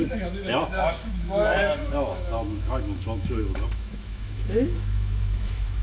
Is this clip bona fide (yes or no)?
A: no